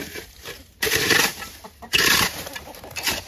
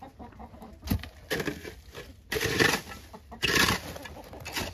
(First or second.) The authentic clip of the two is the second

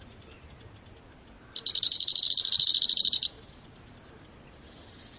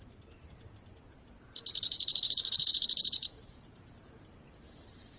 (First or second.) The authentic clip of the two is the first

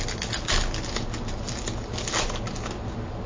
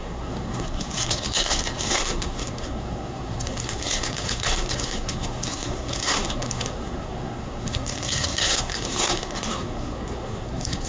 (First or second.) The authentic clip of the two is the first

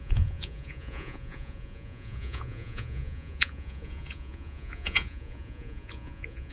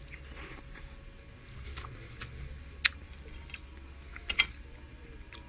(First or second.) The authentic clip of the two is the second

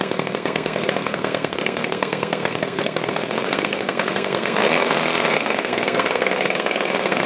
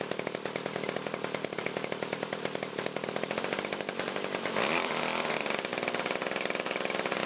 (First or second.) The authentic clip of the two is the second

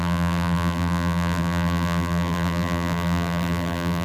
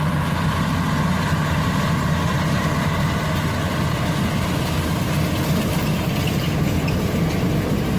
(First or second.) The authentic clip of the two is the second